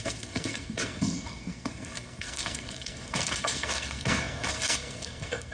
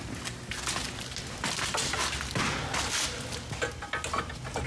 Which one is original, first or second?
second